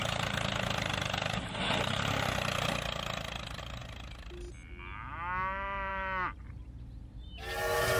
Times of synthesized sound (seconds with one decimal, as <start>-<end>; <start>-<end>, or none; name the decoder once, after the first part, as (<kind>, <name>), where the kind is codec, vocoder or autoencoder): none